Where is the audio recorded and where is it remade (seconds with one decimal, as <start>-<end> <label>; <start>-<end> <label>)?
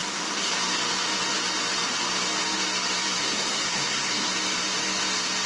0.0-0.5 remade; 0.5-3.2 recorded; 3.2-4.3 remade; 4.3-5.5 recorded